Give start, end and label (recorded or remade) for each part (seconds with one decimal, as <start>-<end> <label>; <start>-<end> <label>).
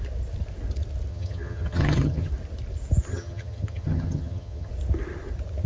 0.0-1.1 recorded; 1.1-2.3 remade; 2.3-3.1 recorded; 3.1-4.7 remade; 4.7-5.7 recorded